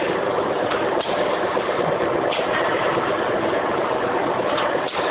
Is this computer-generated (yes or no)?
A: yes